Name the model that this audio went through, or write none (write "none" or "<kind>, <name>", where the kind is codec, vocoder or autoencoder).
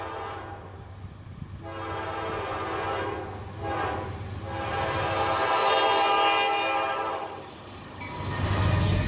none